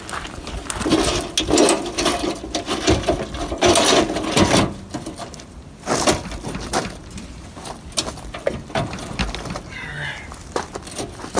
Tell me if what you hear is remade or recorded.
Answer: recorded